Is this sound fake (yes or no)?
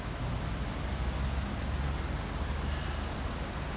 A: no